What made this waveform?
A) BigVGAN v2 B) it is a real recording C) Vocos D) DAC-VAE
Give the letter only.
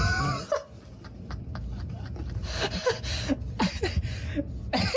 B